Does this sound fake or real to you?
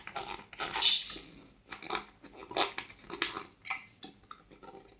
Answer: real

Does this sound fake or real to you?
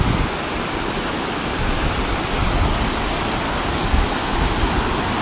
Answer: real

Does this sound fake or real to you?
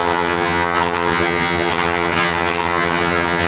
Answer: fake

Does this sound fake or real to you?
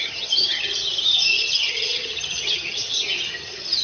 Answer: fake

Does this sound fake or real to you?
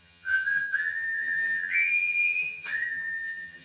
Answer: fake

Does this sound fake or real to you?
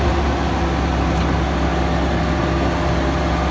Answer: real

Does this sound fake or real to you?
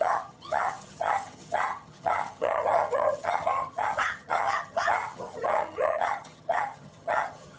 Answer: fake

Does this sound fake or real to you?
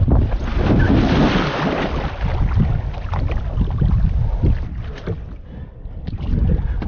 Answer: real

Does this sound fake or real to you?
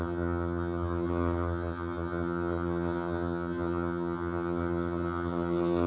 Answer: fake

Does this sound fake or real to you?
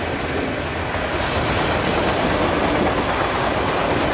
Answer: real